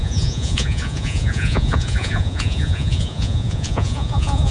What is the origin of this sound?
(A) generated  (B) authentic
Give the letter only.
A